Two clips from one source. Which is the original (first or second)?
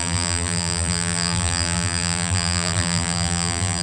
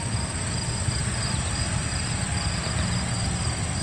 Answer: second